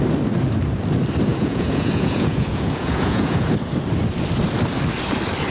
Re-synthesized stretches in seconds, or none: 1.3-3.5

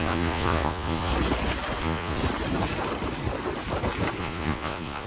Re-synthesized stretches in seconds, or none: 0.0-1.1; 1.8-2.2; 4.2-5.1

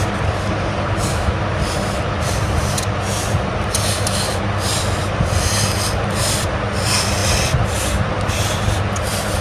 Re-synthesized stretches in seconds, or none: none

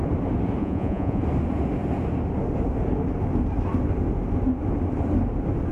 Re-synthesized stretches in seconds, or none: 0.6-1.2

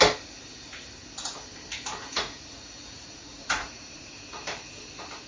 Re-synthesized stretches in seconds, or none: 2.0-4.1

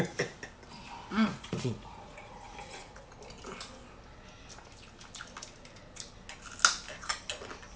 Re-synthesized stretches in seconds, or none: 1.1-3.1